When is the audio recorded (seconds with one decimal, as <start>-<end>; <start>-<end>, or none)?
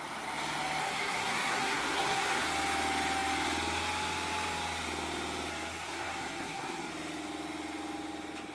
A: 0.0-0.8; 2.4-5.5; 6.9-8.5